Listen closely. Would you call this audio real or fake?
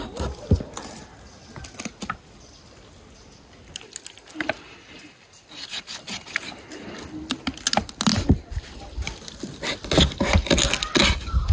real